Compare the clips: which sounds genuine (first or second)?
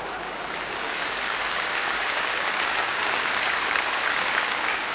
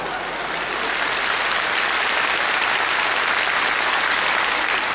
second